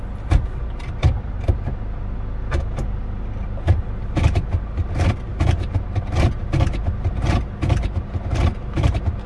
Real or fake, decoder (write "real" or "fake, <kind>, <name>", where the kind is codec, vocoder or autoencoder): real